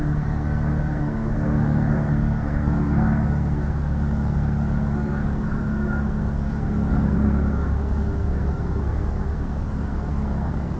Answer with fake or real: fake